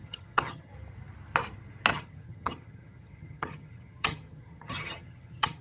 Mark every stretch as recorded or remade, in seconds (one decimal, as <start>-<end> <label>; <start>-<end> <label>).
0.0-0.7 remade; 0.7-1.9 recorded; 1.9-5.6 remade